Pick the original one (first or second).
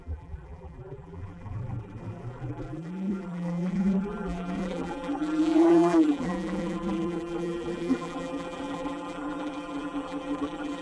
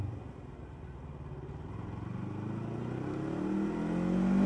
second